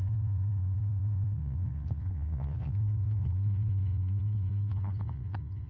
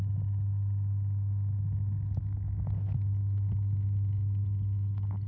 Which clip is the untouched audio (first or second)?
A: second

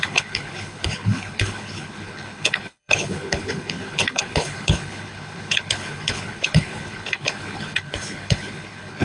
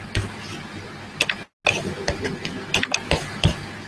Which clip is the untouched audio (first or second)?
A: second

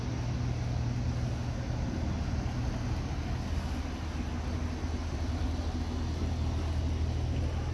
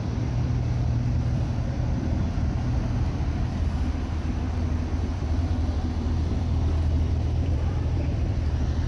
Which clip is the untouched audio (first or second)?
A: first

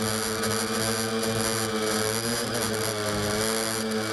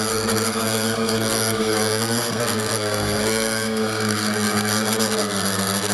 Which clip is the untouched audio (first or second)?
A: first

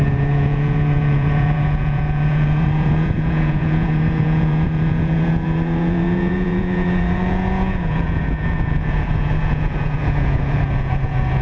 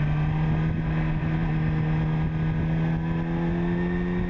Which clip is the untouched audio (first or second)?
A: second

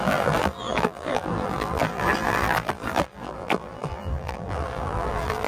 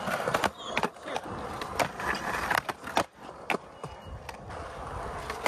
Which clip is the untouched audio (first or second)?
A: second